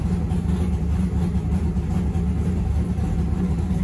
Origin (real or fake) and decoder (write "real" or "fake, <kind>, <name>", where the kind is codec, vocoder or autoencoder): real